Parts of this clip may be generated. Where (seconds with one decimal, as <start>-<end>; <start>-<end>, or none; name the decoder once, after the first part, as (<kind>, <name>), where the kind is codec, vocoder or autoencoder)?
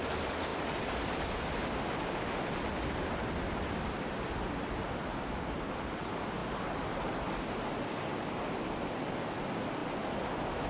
none